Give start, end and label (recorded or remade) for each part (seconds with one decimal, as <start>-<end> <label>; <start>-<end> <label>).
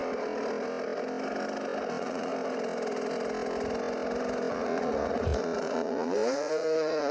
0.0-1.9 recorded; 1.9-2.3 remade; 2.3-4.5 recorded; 4.5-7.1 remade